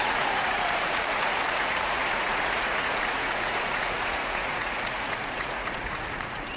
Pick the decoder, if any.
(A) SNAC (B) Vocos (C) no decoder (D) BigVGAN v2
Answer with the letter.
B